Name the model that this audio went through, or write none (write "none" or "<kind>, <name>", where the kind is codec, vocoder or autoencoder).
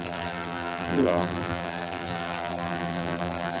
vocoder, BigVGAN v2